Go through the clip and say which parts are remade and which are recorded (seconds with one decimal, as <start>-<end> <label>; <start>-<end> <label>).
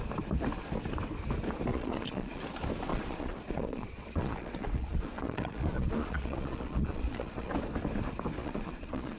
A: 0.0-1.7 recorded; 1.7-2.4 remade; 2.4-2.9 recorded; 2.9-7.5 remade; 7.5-8.4 recorded; 8.4-9.2 remade